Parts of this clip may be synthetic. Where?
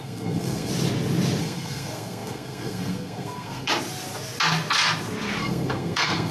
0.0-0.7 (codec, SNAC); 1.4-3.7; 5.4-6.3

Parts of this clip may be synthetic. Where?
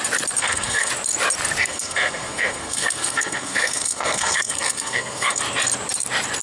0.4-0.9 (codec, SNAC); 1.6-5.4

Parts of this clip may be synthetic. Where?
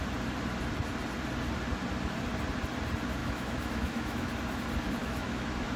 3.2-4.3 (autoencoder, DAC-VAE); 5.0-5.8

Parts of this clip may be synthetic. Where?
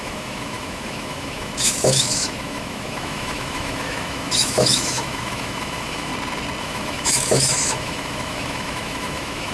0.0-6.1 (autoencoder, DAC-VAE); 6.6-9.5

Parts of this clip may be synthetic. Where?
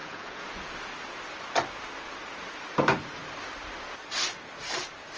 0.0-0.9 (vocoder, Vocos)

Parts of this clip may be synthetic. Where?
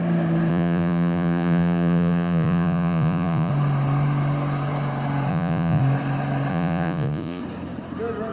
0.5-3.5 (vocoder, Vocos); 5.3-5.8; 6.5-7.4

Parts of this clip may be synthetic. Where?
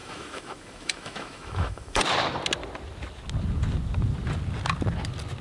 0.0-2.0 (autoencoder, DAC-VAE)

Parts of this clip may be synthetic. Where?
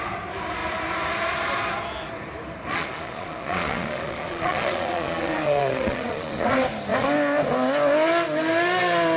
2.6-6.5 (vocoder, Vocos)